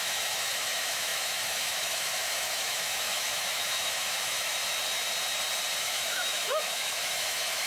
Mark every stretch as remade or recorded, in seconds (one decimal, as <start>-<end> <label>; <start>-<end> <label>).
0.0-4.6 remade; 4.6-5.8 recorded; 5.8-7.7 remade